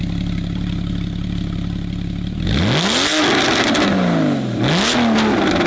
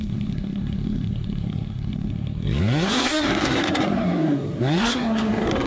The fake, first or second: second